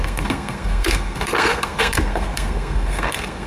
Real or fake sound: fake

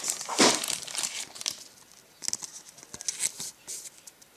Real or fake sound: real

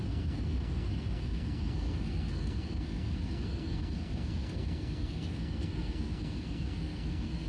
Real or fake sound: fake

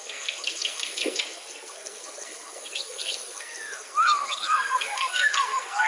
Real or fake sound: fake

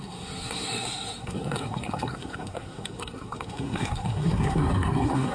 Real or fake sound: fake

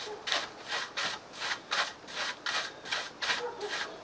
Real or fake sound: real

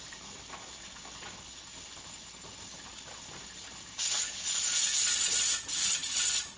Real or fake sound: real